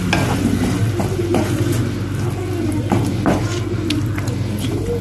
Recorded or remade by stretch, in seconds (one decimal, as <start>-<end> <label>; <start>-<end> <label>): 0.0-5.0 recorded